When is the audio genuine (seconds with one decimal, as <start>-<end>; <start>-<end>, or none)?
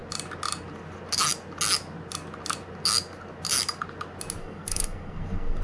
0.0-4.4